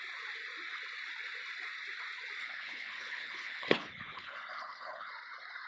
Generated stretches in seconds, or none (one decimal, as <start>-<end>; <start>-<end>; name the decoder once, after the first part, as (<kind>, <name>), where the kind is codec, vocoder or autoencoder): 2.4-5.1 (codec, HILCodec)